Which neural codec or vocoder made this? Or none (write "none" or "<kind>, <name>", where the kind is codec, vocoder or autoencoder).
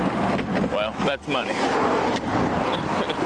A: none